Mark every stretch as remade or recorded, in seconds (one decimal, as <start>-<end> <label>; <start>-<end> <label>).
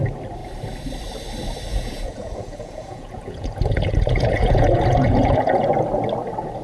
0.0-1.7 recorded; 1.7-5.7 remade; 5.7-6.6 recorded